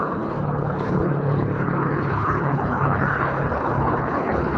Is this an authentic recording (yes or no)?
no